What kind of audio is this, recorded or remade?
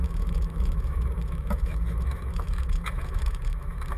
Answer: remade